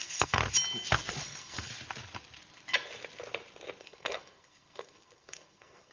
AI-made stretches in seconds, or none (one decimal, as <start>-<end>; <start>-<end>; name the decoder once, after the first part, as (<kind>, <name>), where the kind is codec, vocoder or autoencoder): 0.0-0.4 (codec, SNAC); 1.2-1.7; 3.8-5.9